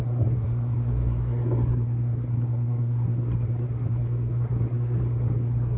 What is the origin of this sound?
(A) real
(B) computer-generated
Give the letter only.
B